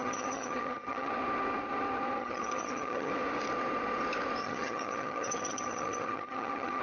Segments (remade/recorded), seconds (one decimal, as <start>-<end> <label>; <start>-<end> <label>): 0.0-1.1 remade; 1.1-2.2 recorded; 2.2-3.1 remade; 3.1-4.4 recorded; 4.4-6.8 remade

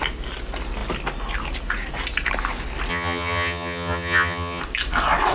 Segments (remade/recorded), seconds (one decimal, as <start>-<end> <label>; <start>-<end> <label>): 0.0-2.9 recorded; 2.9-4.6 remade; 4.6-5.3 recorded

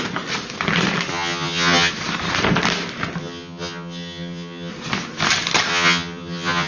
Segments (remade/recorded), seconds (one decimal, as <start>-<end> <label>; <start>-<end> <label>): 0.0-1.1 recorded; 1.1-1.9 remade; 1.9-3.2 recorded; 3.2-4.7 remade; 4.7-5.7 recorded; 5.7-6.7 remade

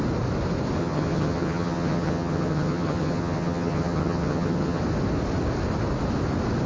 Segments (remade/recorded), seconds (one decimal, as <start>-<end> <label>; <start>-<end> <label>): 0.0-0.8 recorded; 0.8-4.8 remade; 4.8-6.7 recorded

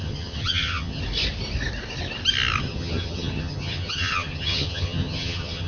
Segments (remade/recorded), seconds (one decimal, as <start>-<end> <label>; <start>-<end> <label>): 0.0-1.0 remade; 1.0-2.6 recorded; 2.6-5.7 remade

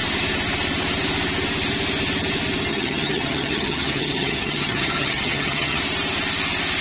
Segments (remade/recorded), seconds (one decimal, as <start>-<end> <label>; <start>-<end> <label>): 0.0-2.7 recorded; 2.7-5.8 remade; 5.8-6.8 recorded

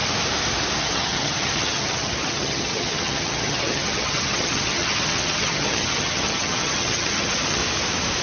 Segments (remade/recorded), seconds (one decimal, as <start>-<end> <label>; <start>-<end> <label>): 0.0-0.8 recorded; 0.8-7.6 remade; 7.6-8.2 recorded